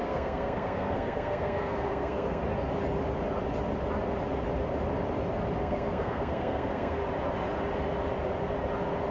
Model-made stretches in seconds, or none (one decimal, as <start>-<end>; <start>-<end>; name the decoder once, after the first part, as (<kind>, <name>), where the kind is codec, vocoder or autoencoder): 0.0-2.4 (codec, SNAC); 5.6-7.0